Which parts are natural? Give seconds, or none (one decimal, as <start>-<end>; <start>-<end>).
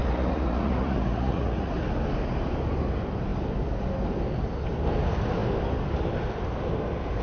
1.7-7.2